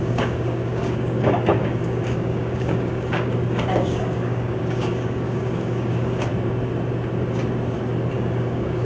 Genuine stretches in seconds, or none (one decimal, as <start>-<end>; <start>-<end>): 6.3-8.1